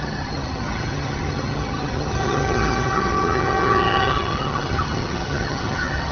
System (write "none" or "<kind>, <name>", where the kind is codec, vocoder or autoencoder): vocoder, HiFi-GAN